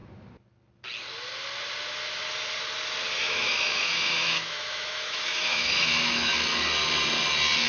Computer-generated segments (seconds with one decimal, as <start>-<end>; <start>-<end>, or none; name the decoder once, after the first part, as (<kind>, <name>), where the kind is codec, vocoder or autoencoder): 3.2-6.3 (autoencoder, DAC-VAE)